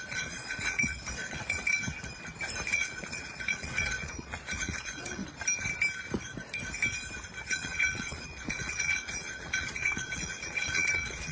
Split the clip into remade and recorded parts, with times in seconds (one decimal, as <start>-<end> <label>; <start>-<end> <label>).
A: 0.0-1.8 remade; 1.8-2.7 recorded; 2.7-5.2 remade; 5.2-7.4 recorded; 7.4-11.3 remade